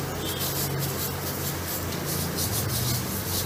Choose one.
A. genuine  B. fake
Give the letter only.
A